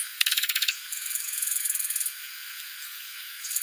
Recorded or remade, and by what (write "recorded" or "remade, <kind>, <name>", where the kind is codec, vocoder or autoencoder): remade, codec, SNAC